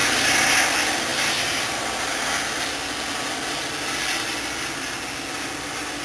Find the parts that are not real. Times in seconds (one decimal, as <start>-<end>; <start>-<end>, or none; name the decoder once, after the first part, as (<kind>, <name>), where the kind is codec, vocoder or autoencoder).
0.0-0.6 (vocoder, BigVGAN v2); 1.1-2.3